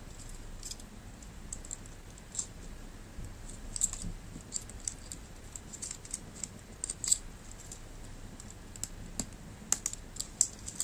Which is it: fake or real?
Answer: real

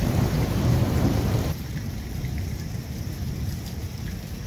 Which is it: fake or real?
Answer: fake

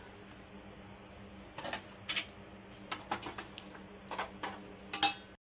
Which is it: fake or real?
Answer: real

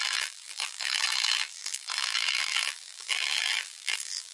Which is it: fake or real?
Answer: fake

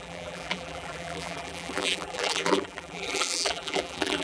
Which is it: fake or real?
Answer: fake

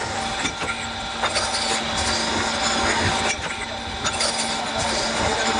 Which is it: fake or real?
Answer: real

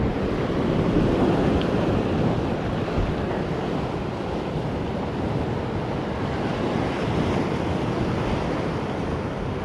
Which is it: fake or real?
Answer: real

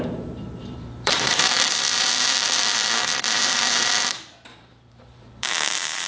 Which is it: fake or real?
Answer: fake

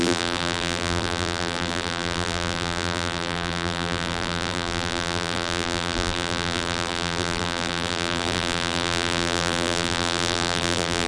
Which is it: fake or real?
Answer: fake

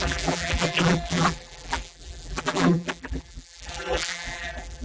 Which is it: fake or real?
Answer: fake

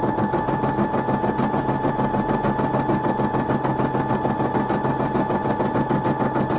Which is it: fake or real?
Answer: real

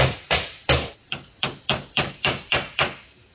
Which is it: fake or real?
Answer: fake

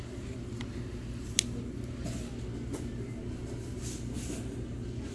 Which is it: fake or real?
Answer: real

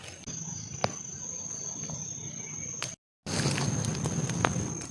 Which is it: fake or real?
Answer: real